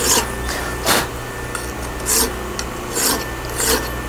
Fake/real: real